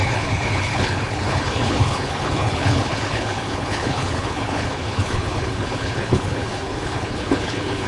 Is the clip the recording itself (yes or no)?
no